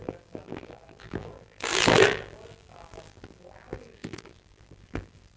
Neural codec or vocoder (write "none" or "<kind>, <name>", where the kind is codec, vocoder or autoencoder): vocoder, BigVGAN v2